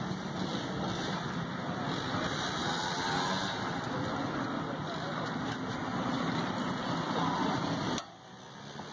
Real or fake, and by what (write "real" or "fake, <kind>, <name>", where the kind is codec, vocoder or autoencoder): real